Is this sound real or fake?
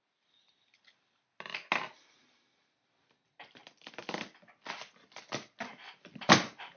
real